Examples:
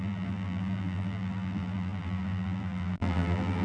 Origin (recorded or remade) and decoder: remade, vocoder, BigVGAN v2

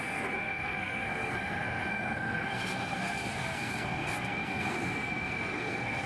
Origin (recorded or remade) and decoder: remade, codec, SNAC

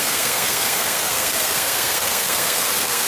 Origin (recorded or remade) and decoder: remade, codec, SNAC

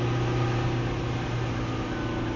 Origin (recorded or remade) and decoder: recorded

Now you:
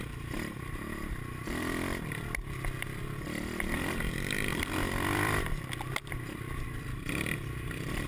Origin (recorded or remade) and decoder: remade, vocoder, BigVGAN v2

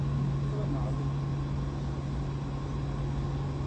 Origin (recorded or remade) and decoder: recorded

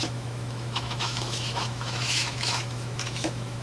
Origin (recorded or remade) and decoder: remade, autoencoder, DAC-VAE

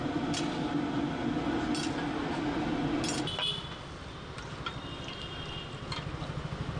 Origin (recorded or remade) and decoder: recorded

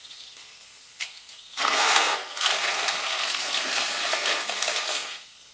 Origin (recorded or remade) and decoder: remade, codec, SNAC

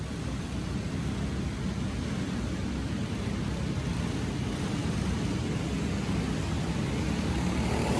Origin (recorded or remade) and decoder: recorded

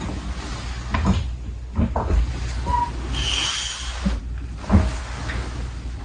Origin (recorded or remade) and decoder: recorded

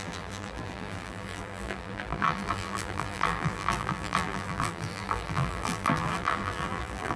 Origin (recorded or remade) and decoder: remade, vocoder, BigVGAN v2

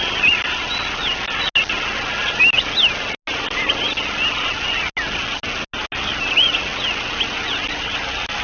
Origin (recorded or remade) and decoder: recorded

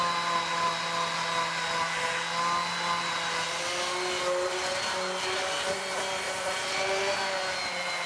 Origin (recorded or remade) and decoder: recorded